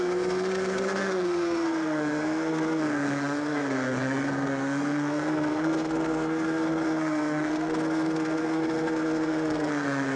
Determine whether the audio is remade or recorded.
remade